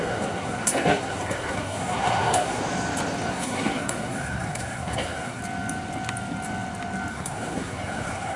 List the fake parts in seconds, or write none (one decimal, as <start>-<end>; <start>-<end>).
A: 0.0-2.6; 3.3-5.4; 7.1-8.4